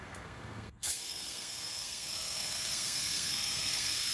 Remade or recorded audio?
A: remade